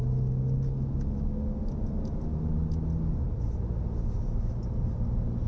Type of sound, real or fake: real